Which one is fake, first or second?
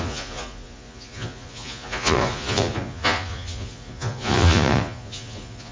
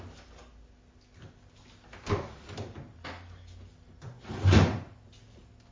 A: first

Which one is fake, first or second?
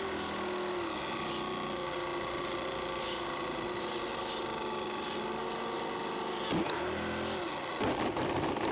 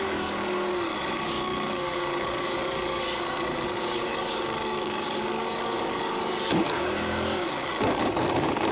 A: second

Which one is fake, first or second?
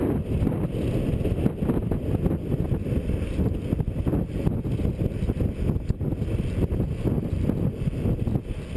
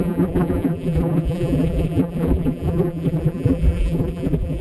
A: second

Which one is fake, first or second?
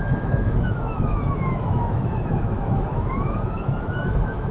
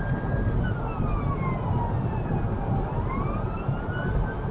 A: first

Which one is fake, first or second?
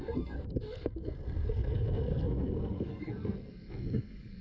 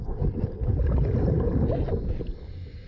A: first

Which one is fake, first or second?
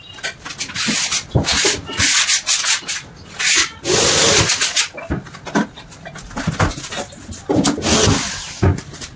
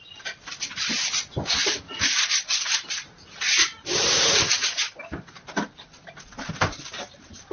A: second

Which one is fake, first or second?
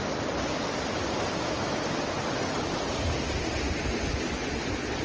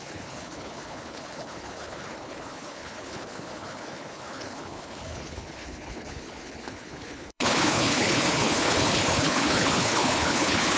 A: second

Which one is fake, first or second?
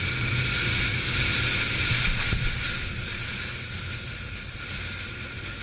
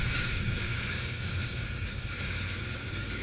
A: second